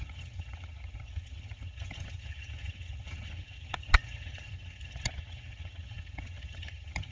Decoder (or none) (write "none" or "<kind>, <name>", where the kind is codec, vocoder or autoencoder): vocoder, HiFi-GAN